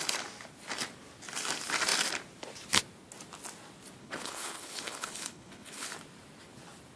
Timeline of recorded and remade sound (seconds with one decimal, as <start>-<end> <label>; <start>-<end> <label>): 0.0-4.0 recorded; 4.0-5.9 remade; 5.9-7.0 recorded